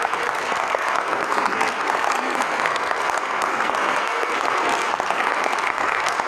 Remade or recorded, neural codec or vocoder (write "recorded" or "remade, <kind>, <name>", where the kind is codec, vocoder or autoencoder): remade, codec, SNAC